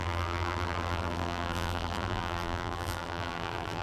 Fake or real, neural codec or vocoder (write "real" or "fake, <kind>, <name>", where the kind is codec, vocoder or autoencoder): fake, vocoder, BigVGAN v2